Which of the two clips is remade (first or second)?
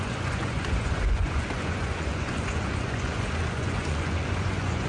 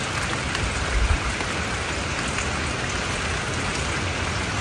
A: first